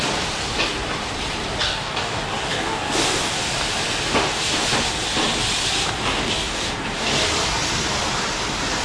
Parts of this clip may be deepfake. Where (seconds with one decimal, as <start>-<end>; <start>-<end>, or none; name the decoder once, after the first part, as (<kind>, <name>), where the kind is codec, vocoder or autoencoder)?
1.6-3.3 (codec, DAC); 6.2-6.7